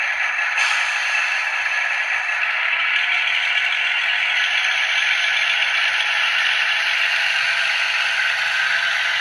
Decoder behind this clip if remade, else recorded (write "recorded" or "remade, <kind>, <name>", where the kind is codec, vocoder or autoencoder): recorded